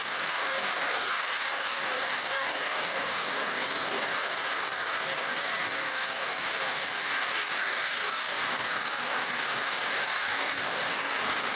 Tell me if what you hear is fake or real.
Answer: fake